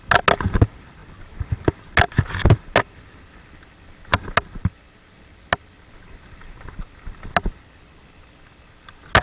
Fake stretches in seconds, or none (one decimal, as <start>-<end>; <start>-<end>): none